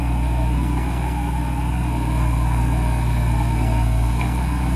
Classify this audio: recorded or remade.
remade